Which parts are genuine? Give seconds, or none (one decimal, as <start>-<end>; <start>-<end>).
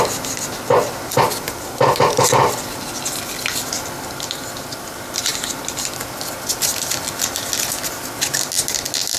0.0-9.2